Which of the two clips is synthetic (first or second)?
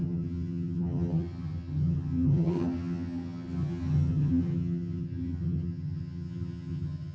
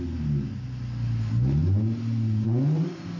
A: first